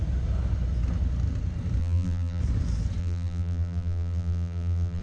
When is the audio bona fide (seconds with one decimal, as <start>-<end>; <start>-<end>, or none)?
0.0-1.8; 2.4-3.0